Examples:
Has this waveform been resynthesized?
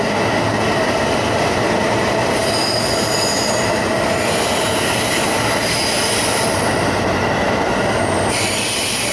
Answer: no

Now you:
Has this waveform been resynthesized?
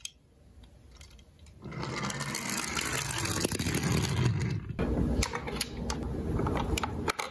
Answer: no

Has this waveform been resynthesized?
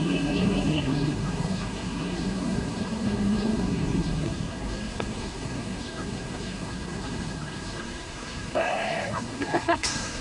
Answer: yes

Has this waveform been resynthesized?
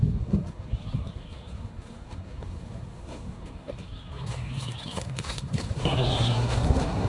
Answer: yes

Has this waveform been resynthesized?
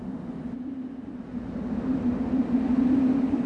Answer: no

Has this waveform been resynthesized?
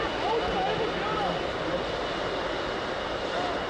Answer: no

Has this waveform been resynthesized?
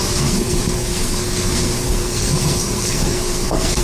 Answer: yes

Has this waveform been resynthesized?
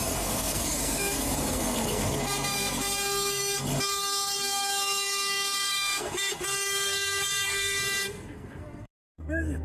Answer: yes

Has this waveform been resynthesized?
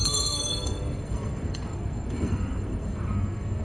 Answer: yes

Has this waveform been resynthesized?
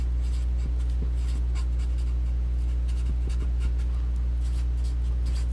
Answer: no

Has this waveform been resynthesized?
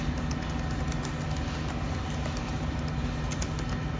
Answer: no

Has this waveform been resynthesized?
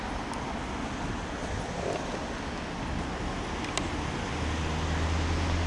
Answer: no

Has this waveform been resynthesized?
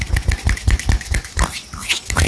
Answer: no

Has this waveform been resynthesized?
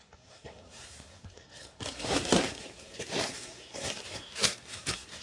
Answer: yes